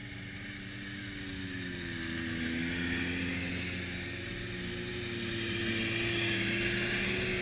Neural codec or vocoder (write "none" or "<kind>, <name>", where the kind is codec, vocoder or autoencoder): none